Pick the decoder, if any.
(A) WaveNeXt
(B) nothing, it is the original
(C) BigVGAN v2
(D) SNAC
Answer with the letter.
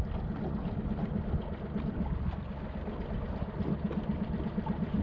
B